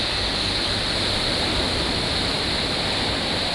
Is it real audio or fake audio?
real